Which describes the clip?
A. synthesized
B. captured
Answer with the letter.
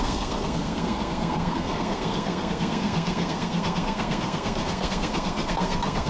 A